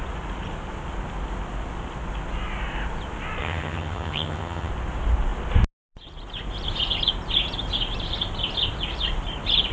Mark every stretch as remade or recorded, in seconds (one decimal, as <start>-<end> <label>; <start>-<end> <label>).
0.0-3.4 recorded; 3.4-4.7 remade; 4.7-9.7 recorded